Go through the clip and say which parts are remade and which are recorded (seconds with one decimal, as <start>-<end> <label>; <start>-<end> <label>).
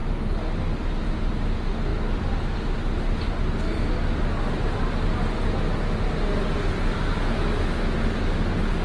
0.0-1.9 recorded; 1.9-3.3 remade; 3.3-8.8 recorded